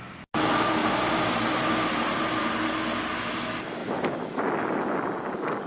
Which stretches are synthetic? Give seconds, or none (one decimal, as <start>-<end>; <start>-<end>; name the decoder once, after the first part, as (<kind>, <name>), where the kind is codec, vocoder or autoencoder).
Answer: 0.8-2.4 (vocoder, BigVGAN v2)